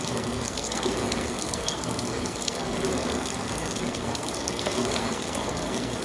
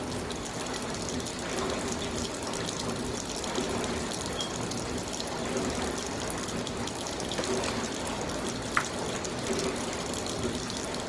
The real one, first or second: second